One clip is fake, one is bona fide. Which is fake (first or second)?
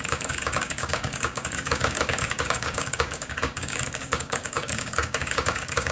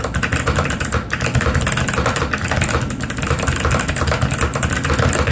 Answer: first